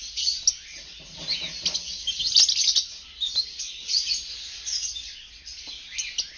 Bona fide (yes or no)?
yes